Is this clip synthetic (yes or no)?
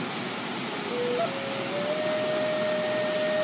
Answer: no